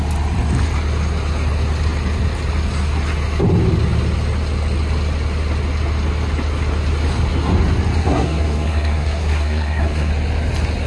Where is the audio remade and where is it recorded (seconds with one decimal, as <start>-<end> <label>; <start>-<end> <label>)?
0.0-8.0 recorded; 8.0-10.1 remade; 10.1-10.9 recorded